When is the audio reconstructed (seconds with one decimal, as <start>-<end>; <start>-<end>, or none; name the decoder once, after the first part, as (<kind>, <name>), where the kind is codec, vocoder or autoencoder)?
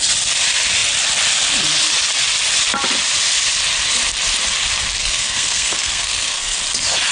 5.0-6.6 (codec, SNAC)